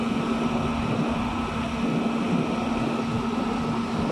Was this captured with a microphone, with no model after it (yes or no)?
yes